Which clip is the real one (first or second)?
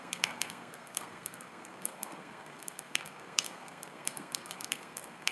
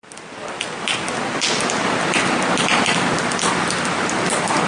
second